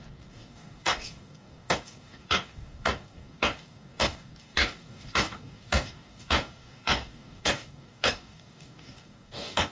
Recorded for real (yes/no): no